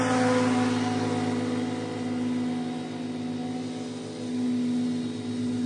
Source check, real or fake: real